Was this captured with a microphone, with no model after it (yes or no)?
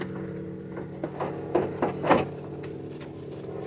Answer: yes